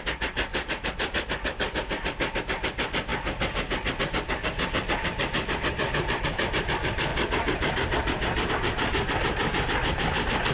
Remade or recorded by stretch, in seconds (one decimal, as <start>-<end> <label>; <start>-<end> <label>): 0.0-3.1 remade; 3.1-4.0 recorded; 4.0-7.1 remade; 7.1-8.5 recorded; 8.5-10.5 remade